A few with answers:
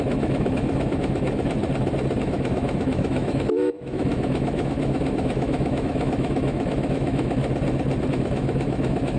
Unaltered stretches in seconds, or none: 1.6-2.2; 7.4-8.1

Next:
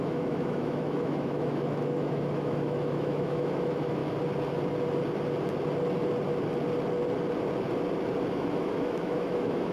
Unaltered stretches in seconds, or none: 4.0-8.3

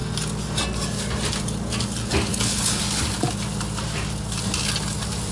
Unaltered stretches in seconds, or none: 0.0-2.3; 2.8-5.3